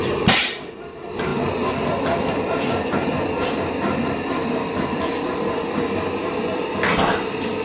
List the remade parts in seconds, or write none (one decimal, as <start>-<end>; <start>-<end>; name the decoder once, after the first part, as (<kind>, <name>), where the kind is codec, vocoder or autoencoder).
none